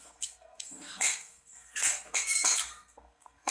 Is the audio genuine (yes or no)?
no